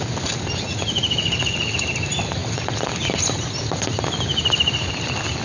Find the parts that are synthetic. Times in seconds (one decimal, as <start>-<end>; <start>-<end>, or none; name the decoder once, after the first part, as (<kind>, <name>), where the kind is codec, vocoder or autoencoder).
none